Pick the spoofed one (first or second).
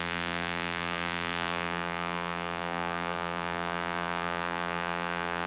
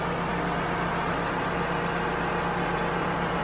first